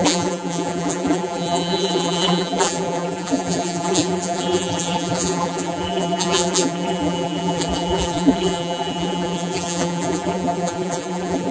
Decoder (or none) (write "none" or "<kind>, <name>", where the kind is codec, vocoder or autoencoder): vocoder, BigVGAN v2